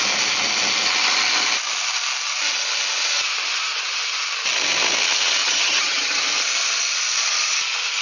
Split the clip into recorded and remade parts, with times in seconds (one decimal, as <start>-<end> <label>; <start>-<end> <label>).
0.0-5.4 recorded; 5.4-6.2 remade; 6.2-8.0 recorded